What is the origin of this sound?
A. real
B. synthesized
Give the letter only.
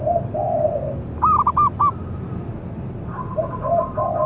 A